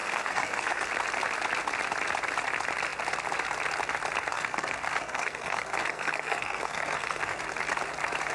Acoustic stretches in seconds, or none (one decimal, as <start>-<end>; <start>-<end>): 0.9-4.3; 7.4-8.3